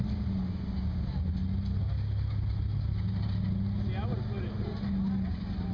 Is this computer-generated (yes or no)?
no